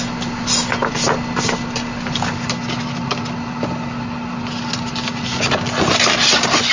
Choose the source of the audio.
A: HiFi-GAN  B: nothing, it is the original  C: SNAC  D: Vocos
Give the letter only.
B